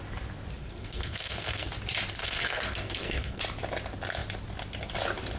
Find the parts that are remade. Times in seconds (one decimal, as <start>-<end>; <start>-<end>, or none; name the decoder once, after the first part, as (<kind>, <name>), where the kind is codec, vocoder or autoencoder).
0.6-1.7 (codec, SNAC); 2.2-3.4